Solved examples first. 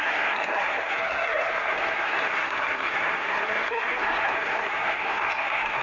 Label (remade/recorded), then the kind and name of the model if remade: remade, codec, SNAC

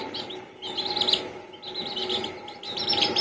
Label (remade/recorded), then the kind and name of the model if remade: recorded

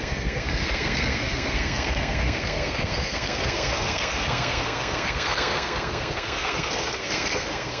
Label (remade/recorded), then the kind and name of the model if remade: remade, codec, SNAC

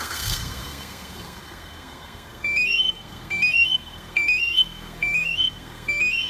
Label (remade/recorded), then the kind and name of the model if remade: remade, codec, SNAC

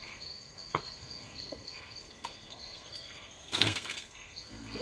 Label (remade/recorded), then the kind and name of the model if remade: remade, codec, SNAC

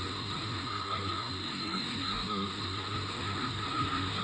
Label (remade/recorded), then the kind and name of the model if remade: remade, codec, SNAC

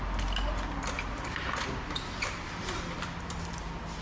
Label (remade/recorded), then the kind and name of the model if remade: recorded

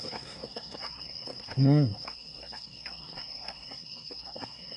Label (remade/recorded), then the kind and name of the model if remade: remade, codec, SNAC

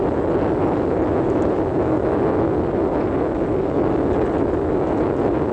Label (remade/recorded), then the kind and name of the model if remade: recorded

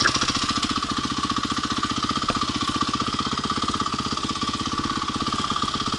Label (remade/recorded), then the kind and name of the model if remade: recorded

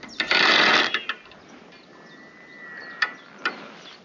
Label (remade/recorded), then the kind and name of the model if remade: recorded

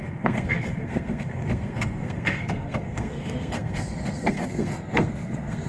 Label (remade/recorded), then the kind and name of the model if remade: remade, codec, SNAC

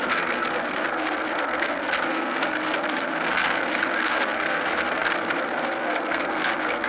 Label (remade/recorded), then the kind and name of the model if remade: remade, codec, SNAC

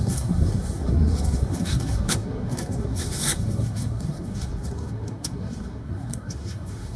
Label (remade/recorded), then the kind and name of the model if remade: remade, codec, SNAC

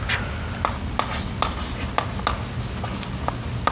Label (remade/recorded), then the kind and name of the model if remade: recorded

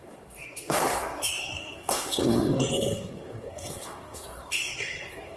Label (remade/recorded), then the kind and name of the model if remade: remade, codec, SNAC